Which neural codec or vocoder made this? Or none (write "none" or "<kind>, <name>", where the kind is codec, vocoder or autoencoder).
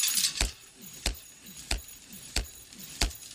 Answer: none